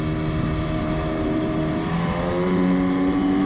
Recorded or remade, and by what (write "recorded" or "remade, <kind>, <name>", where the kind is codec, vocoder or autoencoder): remade, vocoder, BigVGAN v2